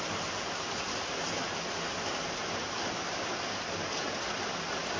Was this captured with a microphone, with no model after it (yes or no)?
yes